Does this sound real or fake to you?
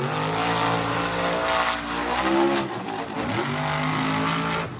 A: real